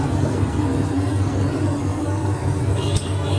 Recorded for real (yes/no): no